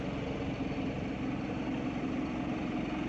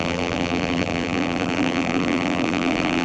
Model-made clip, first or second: second